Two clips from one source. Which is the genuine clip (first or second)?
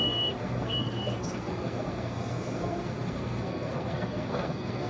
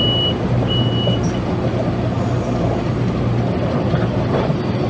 second